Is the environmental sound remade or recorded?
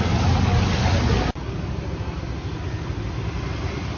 recorded